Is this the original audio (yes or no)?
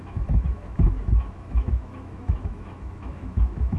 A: no